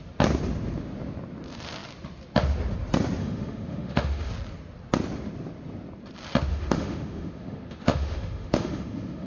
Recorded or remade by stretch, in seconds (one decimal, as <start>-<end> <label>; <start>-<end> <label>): 0.0-3.2 recorded; 3.2-4.3 remade; 4.3-6.5 recorded; 6.5-9.3 remade